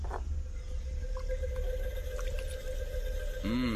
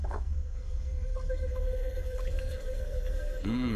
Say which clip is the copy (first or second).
second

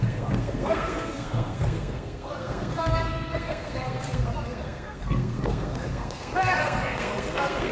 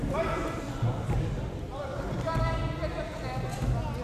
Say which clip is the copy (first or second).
first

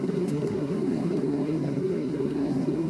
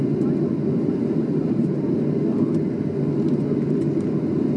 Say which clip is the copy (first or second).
first